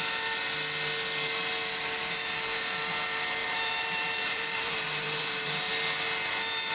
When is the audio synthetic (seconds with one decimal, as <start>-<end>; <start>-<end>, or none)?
3.4-5.7